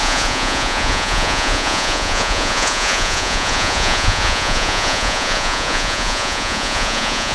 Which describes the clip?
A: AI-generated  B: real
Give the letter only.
A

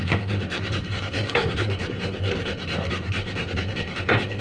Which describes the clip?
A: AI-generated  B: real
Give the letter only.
A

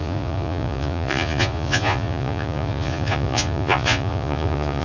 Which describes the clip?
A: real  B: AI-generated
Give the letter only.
B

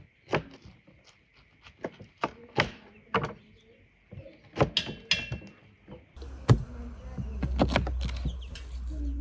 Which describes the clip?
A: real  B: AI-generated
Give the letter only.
A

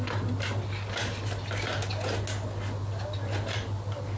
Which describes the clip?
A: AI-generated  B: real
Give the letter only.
B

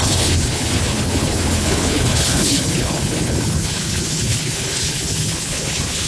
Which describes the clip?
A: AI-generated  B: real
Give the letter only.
A